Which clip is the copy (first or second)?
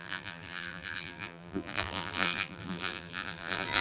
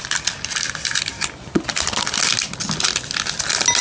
first